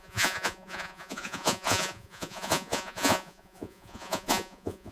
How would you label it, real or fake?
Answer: fake